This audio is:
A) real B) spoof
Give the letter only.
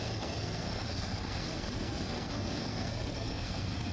B